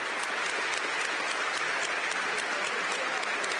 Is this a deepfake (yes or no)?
no